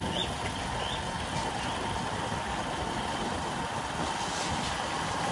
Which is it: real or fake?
real